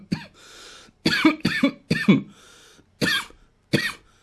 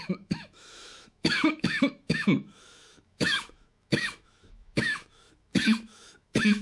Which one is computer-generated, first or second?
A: second